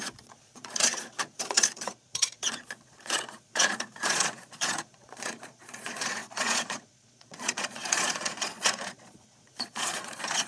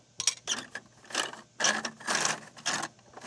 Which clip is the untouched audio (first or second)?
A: second